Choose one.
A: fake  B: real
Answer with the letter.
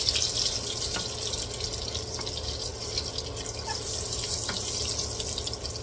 B